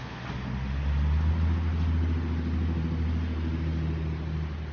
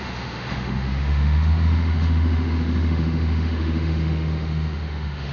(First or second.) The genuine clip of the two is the first